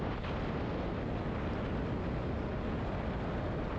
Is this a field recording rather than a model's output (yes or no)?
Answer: yes